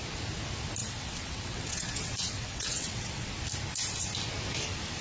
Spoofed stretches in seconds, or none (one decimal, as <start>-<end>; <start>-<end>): 0.8-3.3